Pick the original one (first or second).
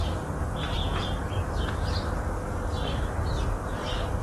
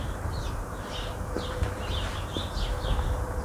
first